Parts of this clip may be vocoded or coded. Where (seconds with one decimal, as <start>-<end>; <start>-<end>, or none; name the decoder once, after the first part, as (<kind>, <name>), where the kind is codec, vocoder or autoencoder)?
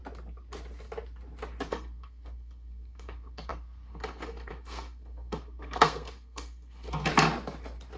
1.7-7.1 (codec, SNAC)